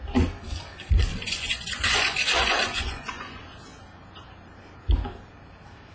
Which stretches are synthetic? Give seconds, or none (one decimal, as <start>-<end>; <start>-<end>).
1.1-3.4